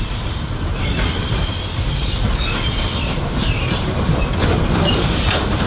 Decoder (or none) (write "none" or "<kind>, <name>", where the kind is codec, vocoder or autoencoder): none